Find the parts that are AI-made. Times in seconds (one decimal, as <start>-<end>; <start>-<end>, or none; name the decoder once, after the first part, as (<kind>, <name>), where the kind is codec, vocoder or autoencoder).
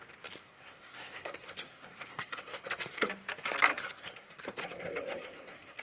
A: 0.4-3.1 (codec, SNAC); 3.7-5.8